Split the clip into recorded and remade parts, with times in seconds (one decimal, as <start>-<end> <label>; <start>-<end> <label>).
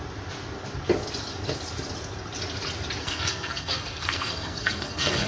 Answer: 0.0-3.0 recorded; 3.0-5.3 remade